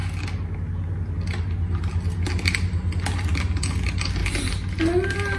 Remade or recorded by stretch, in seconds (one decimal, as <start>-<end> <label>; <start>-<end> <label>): 0.0-5.4 recorded